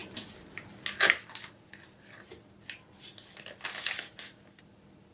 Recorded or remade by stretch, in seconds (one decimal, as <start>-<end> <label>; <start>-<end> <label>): 0.0-5.1 recorded